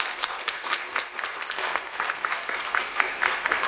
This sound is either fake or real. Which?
fake